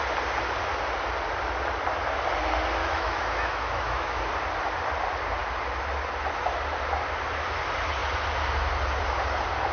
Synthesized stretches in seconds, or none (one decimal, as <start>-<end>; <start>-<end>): 2.8-4.2